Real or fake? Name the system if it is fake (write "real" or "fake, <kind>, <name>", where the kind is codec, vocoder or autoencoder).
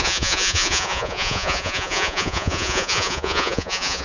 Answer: fake, vocoder, Vocos